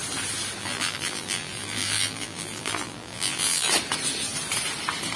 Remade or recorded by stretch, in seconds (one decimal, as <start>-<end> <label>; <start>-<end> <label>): 0.0-0.6 recorded; 0.6-3.7 remade; 3.7-5.2 recorded